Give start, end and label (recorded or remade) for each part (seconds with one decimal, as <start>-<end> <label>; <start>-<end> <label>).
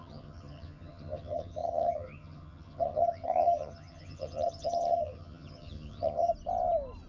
0.0-6.3 remade; 6.3-7.1 recorded